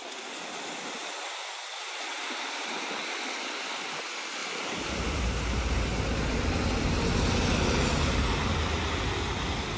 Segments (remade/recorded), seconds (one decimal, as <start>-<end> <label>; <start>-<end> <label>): 0.0-1.5 remade; 1.5-4.4 recorded; 4.4-5.2 remade; 5.2-6.1 recorded; 6.1-6.6 remade; 6.6-9.8 recorded